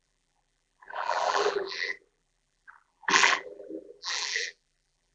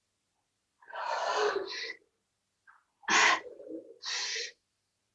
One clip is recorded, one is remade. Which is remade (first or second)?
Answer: first